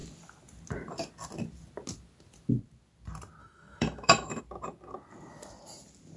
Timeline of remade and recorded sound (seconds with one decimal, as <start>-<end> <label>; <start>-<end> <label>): 0.0-3.4 recorded; 3.4-4.4 remade; 4.4-6.2 recorded